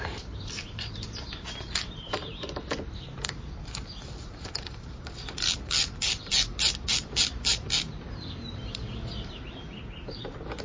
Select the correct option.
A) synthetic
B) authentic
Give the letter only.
A